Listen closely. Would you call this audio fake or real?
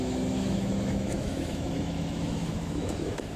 fake